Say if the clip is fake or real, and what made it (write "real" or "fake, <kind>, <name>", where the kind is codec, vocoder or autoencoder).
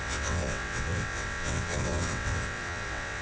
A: fake, vocoder, WaveNeXt